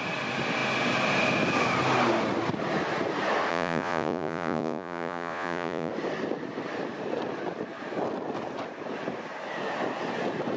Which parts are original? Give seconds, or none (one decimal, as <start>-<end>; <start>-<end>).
0.0-3.5; 5.9-10.6